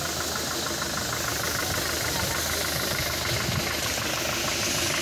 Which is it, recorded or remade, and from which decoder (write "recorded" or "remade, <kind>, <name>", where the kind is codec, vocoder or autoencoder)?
recorded